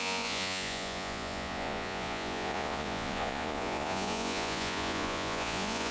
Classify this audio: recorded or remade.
remade